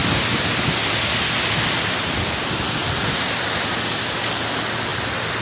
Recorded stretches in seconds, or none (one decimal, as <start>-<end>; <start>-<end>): 0.0-2.8; 3.7-4.9